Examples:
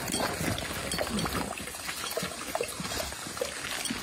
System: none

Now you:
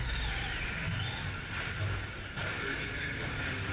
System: none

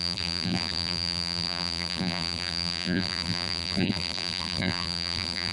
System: vocoder, BigVGAN v2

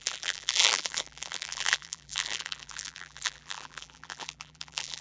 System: vocoder, BigVGAN v2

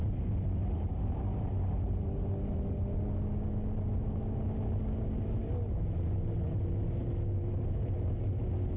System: none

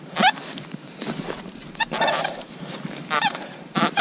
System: vocoder, BigVGAN v2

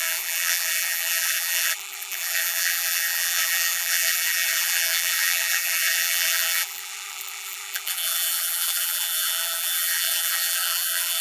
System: vocoder, BigVGAN v2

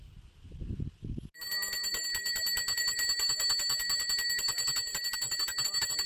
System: none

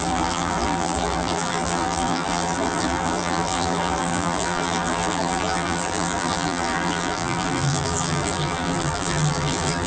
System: vocoder, BigVGAN v2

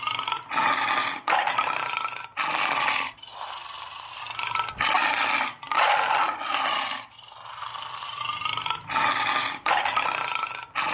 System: none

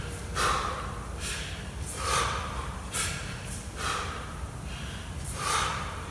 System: vocoder, BigVGAN v2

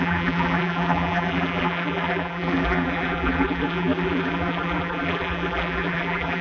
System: vocoder, BigVGAN v2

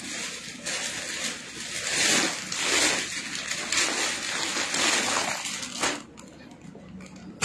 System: none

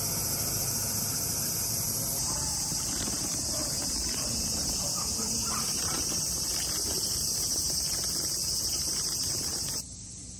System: vocoder, BigVGAN v2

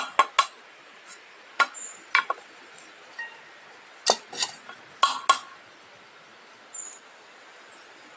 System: none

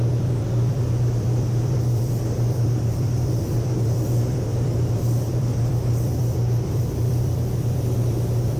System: vocoder, BigVGAN v2